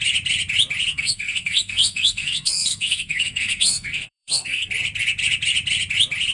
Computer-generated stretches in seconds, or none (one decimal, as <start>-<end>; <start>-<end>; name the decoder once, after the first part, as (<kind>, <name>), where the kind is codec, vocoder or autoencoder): 0.9-4.7 (codec, SNAC)